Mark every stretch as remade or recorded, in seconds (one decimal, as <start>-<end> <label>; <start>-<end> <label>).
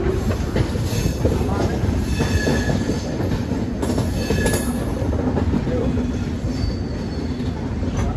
0.0-3.4 recorded; 3.4-3.9 remade; 3.9-8.2 recorded